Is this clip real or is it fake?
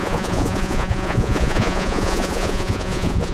fake